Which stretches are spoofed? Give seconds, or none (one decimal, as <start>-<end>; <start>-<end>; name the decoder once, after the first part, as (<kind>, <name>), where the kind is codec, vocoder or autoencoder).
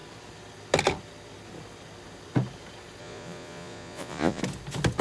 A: 3.0-4.4 (vocoder, Vocos)